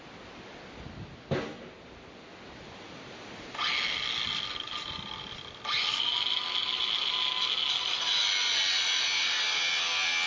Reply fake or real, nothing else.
real